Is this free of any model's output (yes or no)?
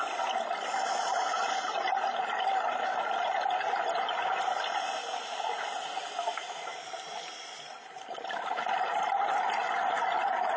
yes